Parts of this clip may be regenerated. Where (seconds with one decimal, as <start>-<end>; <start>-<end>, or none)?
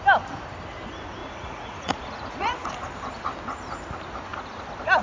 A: 1.2-2.7